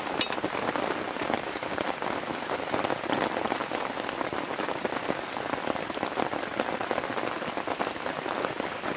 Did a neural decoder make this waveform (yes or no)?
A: no